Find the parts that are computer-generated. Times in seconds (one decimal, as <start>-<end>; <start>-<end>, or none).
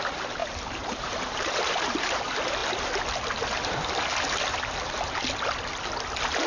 0.4-2.2